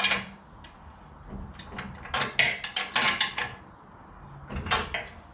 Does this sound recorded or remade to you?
recorded